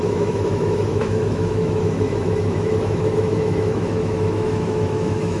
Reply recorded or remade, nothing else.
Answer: remade